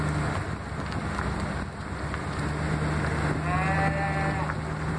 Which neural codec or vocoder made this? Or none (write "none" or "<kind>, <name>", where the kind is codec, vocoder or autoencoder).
none